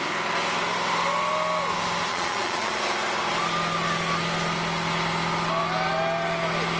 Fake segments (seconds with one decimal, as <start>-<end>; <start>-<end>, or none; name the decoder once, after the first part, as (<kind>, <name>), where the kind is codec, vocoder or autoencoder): 2.1-2.7 (vocoder, Vocos)